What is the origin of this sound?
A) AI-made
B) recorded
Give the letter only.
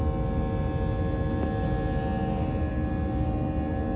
B